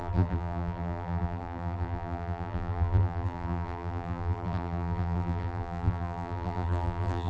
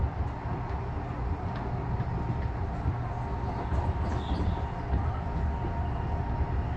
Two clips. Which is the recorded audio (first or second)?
second